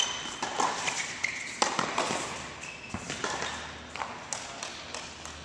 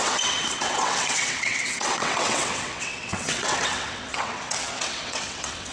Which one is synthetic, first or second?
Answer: second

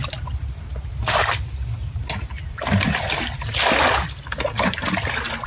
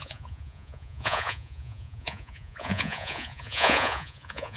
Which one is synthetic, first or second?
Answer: second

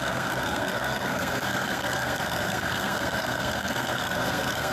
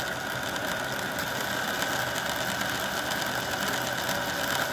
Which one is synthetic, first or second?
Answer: first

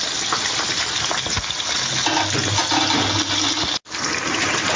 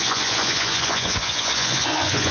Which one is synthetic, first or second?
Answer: second